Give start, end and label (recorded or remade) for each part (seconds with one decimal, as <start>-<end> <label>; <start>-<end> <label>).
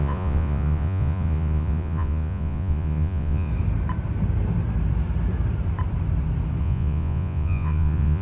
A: 0.0-3.5 remade; 3.5-6.6 recorded; 6.6-8.2 remade